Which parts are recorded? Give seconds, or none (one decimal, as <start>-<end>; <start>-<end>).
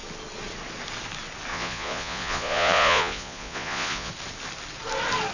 0.0-1.5; 4.1-5.3